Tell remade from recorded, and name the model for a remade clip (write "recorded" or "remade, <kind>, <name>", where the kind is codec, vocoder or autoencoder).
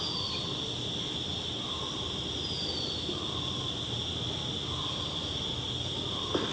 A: recorded